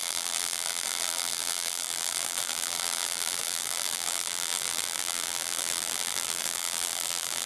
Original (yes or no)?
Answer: no